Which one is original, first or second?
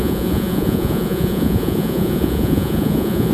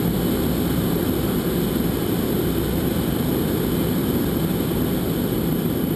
second